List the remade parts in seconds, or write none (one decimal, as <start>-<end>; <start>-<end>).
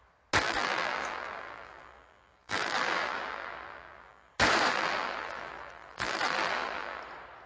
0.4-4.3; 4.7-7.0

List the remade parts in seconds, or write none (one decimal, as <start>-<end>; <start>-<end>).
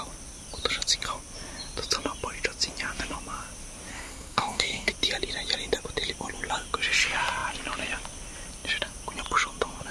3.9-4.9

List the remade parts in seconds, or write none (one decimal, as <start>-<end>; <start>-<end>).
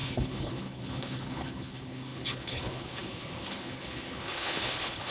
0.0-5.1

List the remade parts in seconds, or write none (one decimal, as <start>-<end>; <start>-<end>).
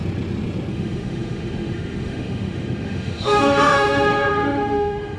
0.7-5.2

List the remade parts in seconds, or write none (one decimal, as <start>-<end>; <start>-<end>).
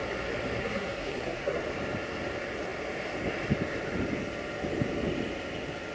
0.6-1.6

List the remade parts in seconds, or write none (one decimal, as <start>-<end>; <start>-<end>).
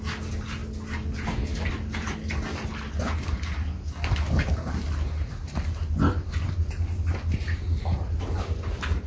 none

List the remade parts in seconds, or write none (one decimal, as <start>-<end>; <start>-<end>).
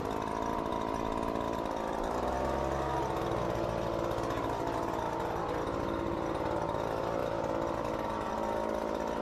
none